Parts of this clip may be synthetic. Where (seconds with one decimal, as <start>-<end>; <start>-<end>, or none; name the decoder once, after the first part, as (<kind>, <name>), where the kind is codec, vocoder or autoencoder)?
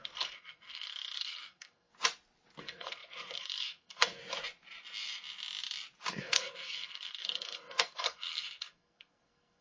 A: 0.0-1.9 (codec, SNAC); 2.6-4.2; 6.1-9.6